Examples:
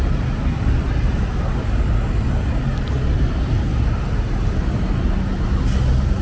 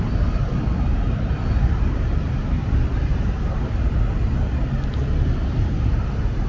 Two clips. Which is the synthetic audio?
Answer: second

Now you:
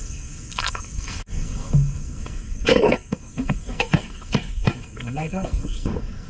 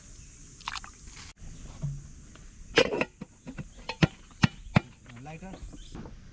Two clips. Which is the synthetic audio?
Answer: first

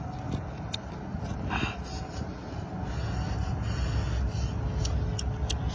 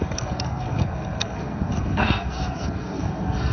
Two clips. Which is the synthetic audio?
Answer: second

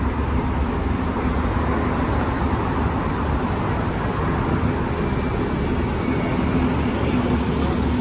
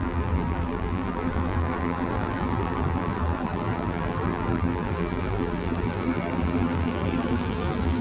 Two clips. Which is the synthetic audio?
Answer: second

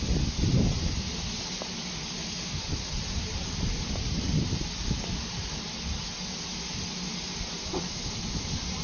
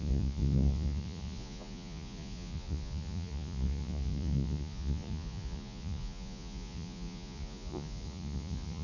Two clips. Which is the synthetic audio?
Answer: second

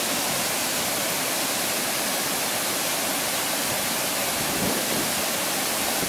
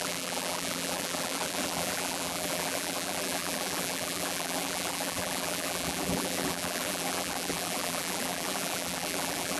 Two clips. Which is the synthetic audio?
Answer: second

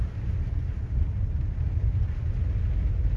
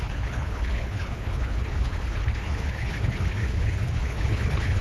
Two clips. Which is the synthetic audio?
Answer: second